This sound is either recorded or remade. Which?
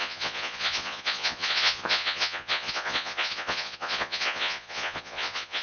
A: remade